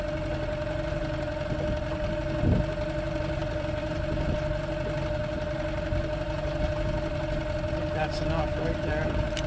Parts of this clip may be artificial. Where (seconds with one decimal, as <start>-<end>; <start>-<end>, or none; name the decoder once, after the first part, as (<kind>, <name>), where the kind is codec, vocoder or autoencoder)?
3.4-4.0 (vocoder, BigVGAN v2)